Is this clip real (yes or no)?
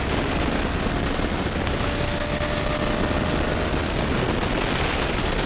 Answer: yes